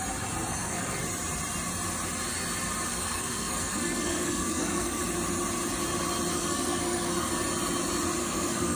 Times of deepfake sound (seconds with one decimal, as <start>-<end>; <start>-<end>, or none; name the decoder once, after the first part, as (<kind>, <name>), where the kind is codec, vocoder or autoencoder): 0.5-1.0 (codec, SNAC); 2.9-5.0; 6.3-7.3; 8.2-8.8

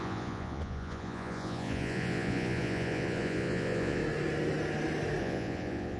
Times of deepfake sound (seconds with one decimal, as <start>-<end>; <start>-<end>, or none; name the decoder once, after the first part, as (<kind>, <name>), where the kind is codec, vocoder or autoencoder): 0.0-4.0 (vocoder, Vocos); 5.2-6.0

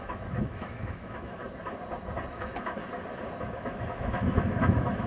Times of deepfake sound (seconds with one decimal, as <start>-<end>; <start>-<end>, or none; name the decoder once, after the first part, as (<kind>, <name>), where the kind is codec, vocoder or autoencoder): 0.0-1.4 (autoencoder, DAC-VAE); 2.3-2.8; 3.4-5.1

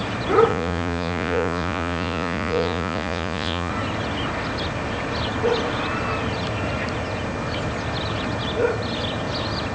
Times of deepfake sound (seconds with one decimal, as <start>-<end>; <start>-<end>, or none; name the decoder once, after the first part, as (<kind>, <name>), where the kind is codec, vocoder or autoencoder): 0.5-3.7 (vocoder, Vocos)

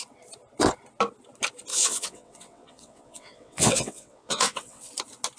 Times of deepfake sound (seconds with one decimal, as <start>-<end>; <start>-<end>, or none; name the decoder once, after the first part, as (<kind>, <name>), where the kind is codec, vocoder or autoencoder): 1.7-4.9 (vocoder, WaveNeXt)